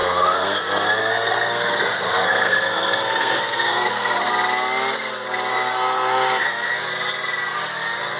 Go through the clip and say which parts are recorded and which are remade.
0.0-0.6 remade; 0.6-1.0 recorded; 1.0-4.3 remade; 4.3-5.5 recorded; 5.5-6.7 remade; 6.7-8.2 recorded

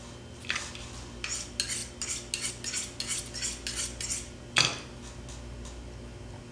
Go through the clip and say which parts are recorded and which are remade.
0.0-6.5 recorded

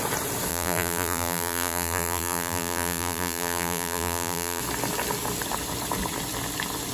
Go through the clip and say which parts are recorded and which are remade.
0.0-0.5 recorded; 0.5-4.6 remade; 4.6-6.9 recorded

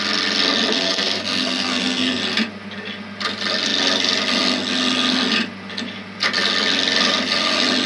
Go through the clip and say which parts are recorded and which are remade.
0.0-0.7 recorded; 0.7-2.2 remade; 2.2-7.9 recorded

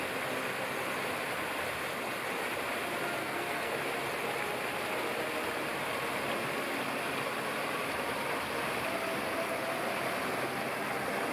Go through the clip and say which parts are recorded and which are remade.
0.0-3.2 recorded; 3.2-3.7 remade; 3.7-11.3 recorded